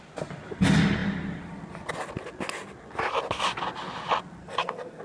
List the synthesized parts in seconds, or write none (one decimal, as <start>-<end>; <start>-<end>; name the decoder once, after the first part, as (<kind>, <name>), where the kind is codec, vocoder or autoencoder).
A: 4.4-5.0 (codec, SNAC)